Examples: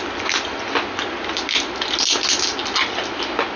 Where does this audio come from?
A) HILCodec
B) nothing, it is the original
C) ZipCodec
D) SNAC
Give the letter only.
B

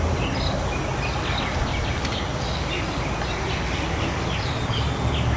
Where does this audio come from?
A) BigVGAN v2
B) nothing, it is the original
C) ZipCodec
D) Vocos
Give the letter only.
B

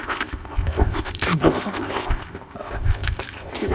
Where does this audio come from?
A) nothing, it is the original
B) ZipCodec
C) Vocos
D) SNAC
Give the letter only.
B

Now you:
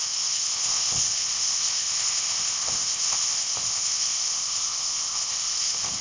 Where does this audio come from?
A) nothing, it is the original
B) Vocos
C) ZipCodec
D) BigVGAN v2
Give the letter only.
C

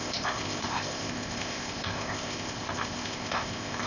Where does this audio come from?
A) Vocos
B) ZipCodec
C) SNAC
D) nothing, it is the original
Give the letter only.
B